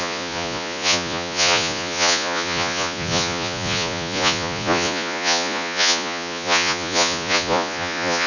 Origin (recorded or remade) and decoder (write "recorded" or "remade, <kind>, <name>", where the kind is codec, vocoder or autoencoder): remade, vocoder, Vocos